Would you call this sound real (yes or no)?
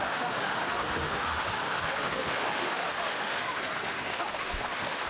no